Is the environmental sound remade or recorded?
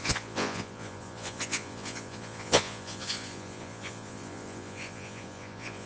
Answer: remade